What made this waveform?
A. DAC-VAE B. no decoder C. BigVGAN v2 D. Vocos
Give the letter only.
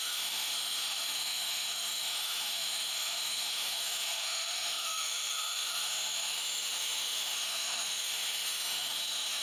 A